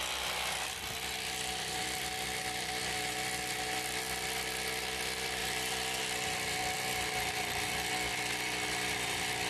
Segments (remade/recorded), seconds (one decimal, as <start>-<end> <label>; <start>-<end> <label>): 0.0-9.5 recorded